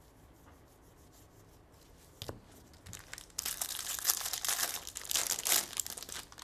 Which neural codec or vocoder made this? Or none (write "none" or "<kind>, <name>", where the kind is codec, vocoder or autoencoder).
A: none